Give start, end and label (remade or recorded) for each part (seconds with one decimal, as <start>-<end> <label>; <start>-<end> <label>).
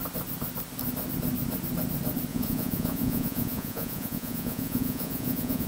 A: 0.0-2.3 recorded; 2.3-5.7 remade